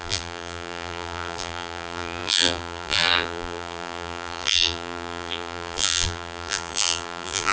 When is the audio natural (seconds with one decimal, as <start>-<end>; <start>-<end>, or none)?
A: none